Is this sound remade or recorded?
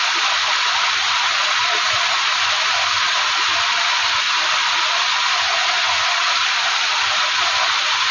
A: recorded